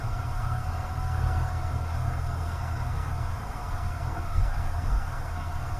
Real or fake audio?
fake